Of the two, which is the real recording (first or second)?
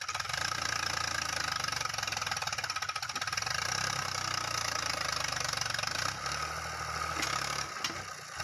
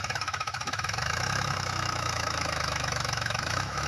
first